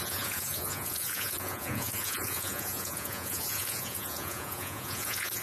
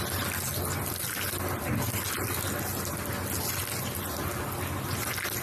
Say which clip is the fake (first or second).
first